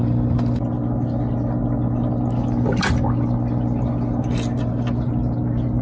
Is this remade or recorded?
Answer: recorded